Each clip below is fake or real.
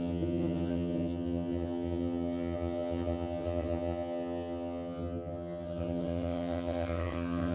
fake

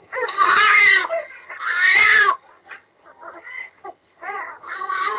fake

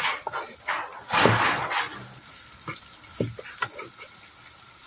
real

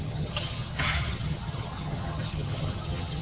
fake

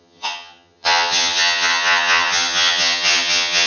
fake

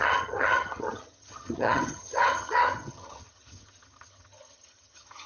fake